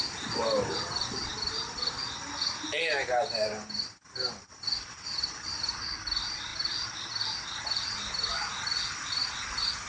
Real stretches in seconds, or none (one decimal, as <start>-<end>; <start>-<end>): 0.0-9.9